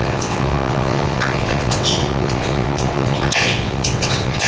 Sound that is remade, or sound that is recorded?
remade